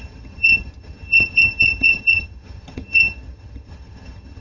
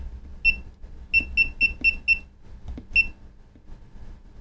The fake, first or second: first